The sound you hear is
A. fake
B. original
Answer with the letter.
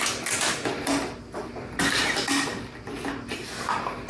B